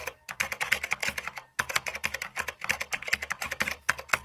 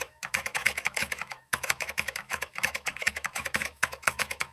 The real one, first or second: first